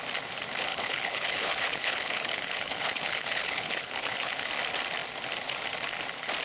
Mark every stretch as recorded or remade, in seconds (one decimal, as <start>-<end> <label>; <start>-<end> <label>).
0.0-0.7 recorded; 0.7-4.5 remade; 4.5-6.4 recorded